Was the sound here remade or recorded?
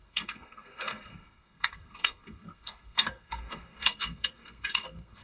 remade